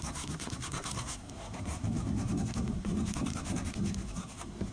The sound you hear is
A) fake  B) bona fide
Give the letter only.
A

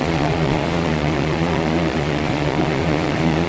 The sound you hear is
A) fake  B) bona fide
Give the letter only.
A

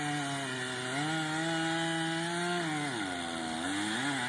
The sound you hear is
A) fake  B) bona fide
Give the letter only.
B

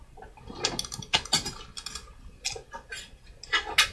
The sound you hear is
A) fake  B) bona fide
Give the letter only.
B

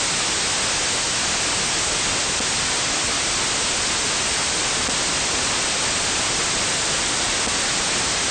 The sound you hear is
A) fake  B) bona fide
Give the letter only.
B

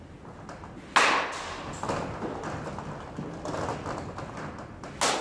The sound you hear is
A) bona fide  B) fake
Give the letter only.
A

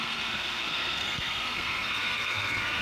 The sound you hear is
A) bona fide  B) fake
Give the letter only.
B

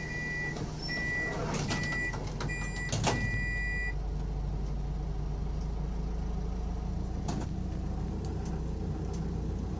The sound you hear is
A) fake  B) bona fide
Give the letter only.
B